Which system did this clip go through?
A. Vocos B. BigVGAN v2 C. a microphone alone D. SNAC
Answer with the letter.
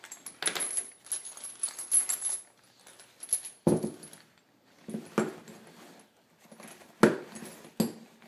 C